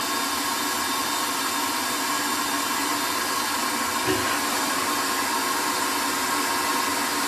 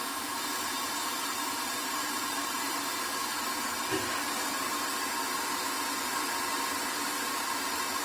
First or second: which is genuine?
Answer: first